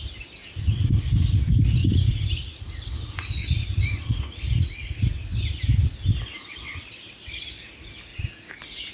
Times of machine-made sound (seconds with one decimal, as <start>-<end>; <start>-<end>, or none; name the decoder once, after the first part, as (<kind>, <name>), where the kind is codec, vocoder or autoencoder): 0.4-1.0 (vocoder, Vocos); 1.8-2.6; 3.4-5.0; 8.1-8.9